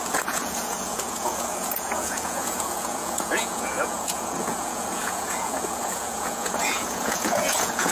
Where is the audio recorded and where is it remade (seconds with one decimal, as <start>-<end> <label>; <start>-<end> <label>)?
0.0-7.9 remade